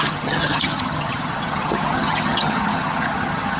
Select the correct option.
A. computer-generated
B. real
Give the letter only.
A